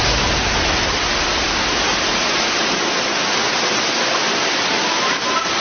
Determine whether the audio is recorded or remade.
recorded